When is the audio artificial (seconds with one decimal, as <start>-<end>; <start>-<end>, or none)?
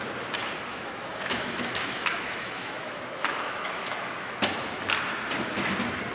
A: 0.7-4.4